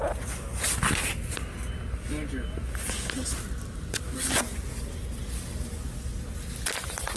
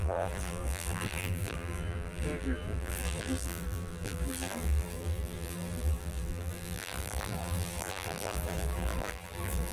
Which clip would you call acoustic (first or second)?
first